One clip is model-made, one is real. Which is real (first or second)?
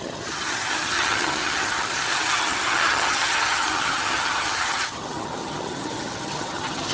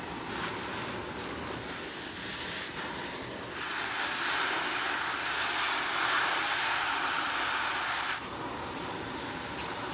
second